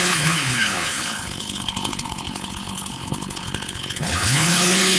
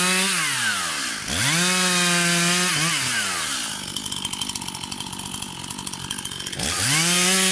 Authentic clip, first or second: second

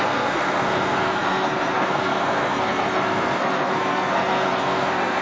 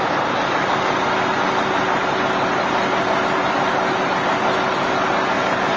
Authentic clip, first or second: second